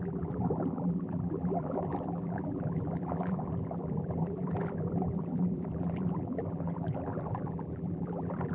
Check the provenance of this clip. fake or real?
fake